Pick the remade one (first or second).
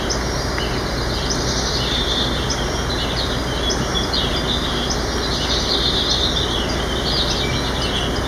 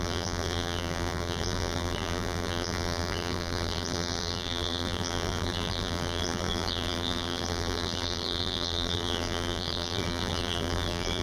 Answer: second